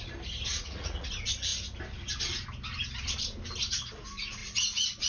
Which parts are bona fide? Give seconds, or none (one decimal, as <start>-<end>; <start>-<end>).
0.0-0.5; 1.1-4.4